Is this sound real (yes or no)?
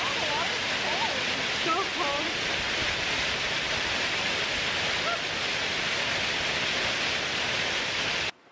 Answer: yes